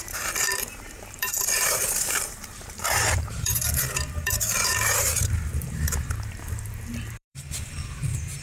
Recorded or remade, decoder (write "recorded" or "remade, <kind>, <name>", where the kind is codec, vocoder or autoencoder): remade, vocoder, BigVGAN v2